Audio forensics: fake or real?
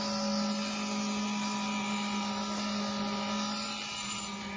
real